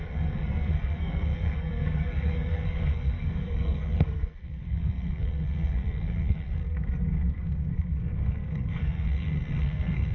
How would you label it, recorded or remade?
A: remade